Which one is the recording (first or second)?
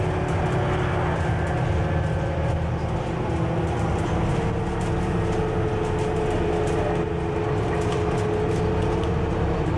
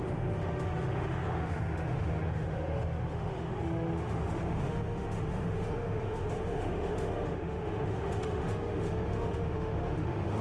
first